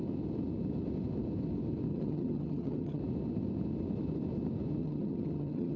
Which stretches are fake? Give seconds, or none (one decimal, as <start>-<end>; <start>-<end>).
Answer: 1.9-3.0; 4.8-5.8